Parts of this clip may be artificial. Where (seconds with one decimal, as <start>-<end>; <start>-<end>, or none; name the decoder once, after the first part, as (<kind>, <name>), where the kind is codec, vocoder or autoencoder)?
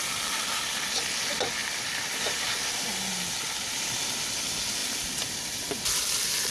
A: 1.6-3.1 (vocoder, BigVGAN v2); 4.8-5.7